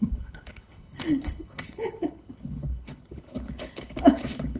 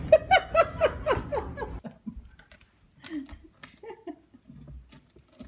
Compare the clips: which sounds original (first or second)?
second